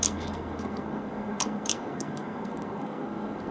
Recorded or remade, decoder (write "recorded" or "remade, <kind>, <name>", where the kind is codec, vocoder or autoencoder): remade, codec, SNAC